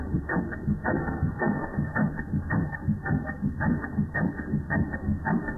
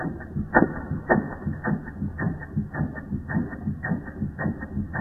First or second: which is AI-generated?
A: first